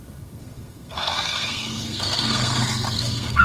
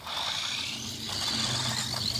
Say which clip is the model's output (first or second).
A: first